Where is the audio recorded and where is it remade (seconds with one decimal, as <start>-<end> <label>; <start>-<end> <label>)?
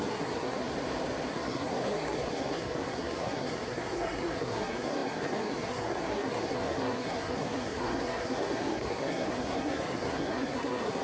0.0-0.7 remade; 0.7-1.3 recorded; 1.3-11.0 remade